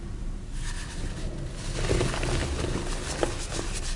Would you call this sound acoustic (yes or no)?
yes